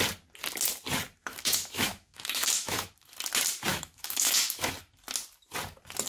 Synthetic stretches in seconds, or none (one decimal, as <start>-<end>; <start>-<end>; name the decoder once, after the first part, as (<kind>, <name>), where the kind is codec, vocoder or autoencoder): 1.2-2.9 (autoencoder, DAC-VAE); 3.7-4.7